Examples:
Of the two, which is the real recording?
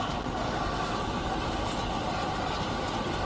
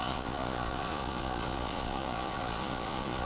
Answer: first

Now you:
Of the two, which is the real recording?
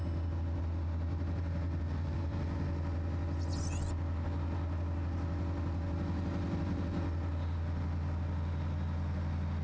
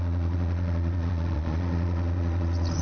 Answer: first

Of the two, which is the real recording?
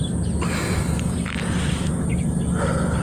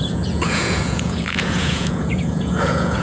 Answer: first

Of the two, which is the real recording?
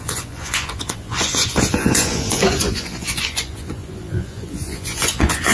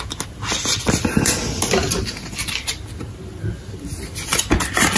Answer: second